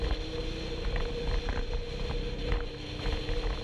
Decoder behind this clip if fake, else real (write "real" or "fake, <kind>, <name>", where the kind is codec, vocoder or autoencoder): real